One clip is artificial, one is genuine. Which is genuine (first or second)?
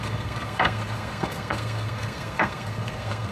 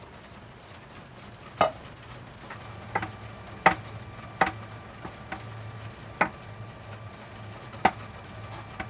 second